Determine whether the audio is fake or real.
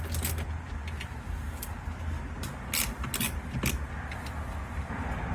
real